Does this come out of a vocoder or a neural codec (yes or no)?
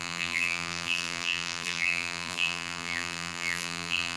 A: yes